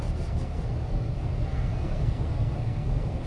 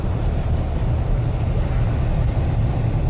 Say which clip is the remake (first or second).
first